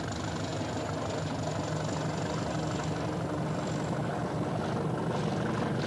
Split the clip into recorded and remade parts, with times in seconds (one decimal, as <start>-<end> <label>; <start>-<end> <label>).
0.0-5.9 recorded